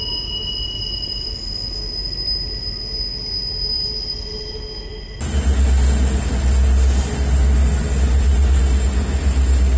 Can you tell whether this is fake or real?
real